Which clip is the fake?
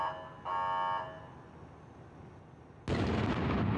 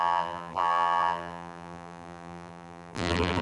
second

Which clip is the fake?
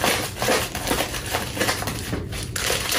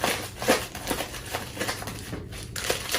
first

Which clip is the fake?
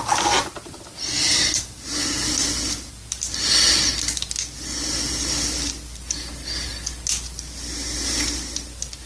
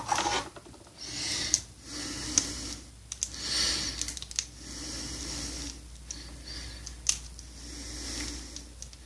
first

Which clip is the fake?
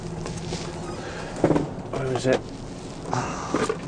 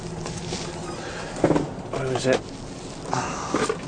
second